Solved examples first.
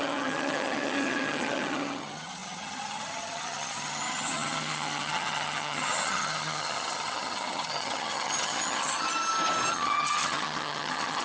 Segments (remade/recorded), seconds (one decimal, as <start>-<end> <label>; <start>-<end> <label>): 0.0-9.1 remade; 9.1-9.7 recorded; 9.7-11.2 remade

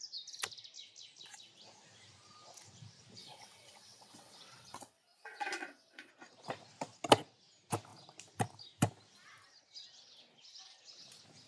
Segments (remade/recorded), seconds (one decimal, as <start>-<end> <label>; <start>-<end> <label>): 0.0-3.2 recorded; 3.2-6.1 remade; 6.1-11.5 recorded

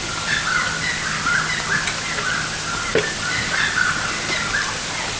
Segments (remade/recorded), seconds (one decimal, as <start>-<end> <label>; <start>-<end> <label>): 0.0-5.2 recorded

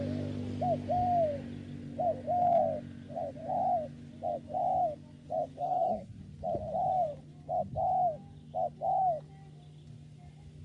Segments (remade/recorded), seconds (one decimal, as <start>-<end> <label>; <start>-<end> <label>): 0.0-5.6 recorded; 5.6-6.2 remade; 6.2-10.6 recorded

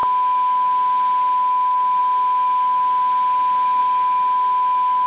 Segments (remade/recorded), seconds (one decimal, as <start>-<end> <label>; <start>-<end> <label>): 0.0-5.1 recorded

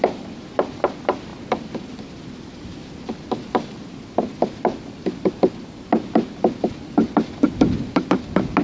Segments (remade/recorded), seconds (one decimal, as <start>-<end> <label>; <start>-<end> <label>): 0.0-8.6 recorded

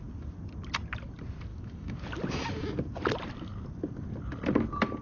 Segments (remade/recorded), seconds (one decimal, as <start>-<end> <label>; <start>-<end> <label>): 0.0-1.5 recorded; 1.5-2.0 remade; 2.0-5.0 recorded

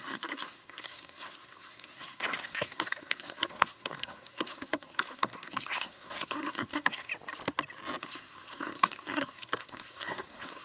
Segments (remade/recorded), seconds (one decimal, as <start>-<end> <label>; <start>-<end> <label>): 0.0-7.1 remade; 7.1-8.0 recorded; 8.0-10.6 remade